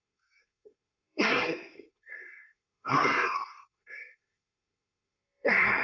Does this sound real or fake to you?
fake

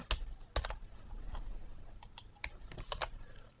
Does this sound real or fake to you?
real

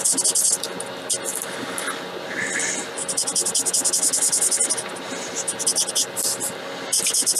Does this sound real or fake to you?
real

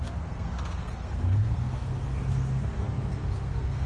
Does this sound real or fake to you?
fake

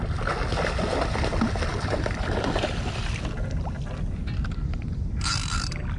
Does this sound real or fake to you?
real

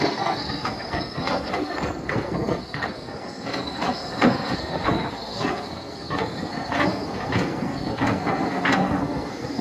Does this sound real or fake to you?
fake